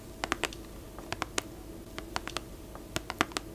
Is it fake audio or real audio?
real